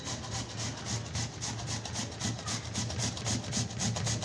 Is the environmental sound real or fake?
real